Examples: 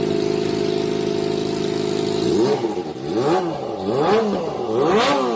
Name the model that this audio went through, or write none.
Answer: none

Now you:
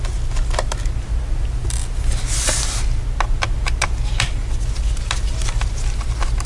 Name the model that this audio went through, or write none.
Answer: none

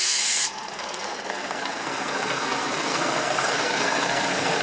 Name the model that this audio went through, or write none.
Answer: codec, SNAC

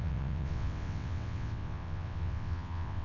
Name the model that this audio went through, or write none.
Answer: vocoder, WaveNeXt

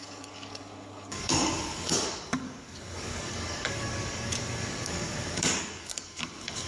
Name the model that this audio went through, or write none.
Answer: codec, DAC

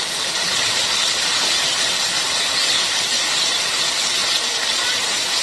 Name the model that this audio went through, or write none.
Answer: none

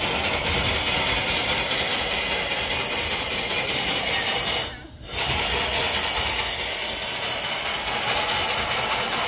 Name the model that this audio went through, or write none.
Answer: none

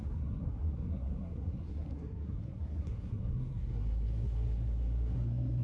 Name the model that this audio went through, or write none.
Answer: codec, SNAC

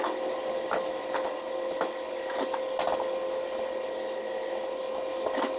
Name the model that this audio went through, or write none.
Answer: none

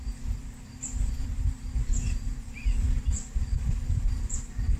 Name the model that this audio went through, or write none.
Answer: vocoder, BigVGAN v2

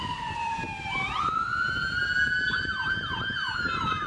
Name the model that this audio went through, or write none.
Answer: vocoder, BigVGAN v2